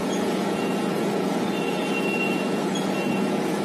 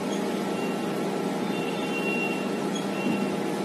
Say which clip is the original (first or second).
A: second